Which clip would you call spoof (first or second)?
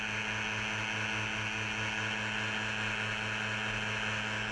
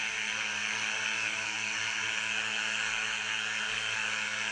second